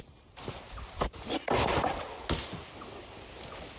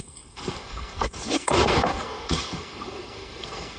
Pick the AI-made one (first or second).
second